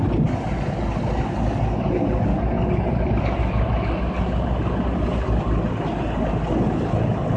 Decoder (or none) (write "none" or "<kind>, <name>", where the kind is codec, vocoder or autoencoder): none